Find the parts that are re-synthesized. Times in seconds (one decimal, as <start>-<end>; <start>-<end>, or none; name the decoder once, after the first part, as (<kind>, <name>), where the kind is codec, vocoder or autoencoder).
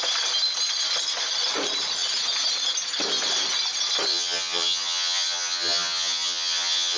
4.1-7.0 (vocoder, HiFi-GAN)